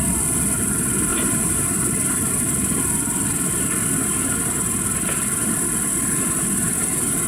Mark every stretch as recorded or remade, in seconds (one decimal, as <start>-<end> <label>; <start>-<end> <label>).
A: 0.0-1.1 recorded; 1.1-2.3 remade; 2.3-7.3 recorded